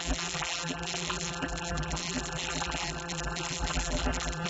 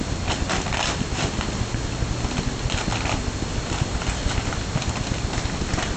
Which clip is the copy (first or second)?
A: first